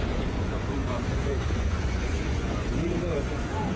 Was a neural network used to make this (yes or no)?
yes